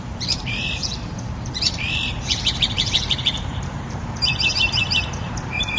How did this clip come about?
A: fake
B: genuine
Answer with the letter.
A